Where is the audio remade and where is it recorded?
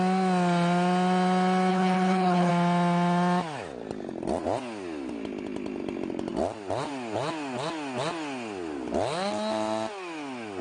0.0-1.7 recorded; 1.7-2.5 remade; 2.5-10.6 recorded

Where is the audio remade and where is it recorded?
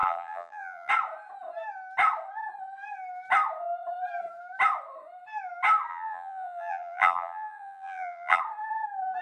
0.0-0.9 remade; 0.9-5.9 recorded; 5.9-8.4 remade; 8.4-9.2 recorded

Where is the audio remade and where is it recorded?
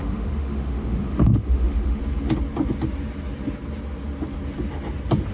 0.0-2.0 remade; 2.0-5.3 recorded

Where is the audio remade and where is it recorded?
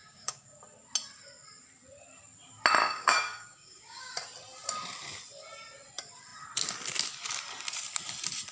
0.0-0.6 remade; 0.6-2.8 recorded; 2.8-4.1 remade; 4.1-8.5 recorded